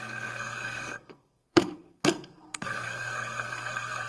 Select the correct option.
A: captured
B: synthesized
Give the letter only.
B